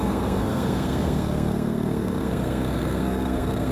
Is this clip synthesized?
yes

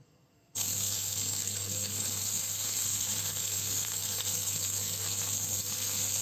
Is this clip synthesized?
yes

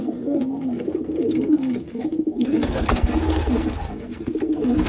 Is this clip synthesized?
yes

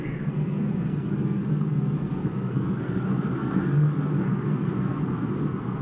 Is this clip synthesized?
yes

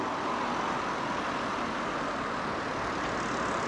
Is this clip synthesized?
no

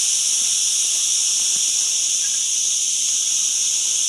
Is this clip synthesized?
no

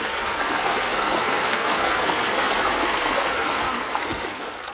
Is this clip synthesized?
yes